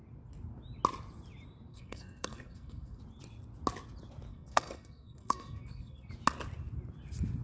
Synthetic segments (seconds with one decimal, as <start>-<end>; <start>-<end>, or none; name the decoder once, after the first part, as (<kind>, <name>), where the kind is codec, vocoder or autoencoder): 1.7-3.0 (codec, SNAC); 4.3-6.1